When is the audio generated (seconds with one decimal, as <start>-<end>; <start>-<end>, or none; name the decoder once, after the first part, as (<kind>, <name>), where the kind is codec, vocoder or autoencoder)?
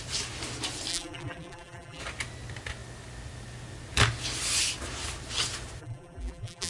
0.9-2.0 (vocoder, BigVGAN v2); 5.8-6.7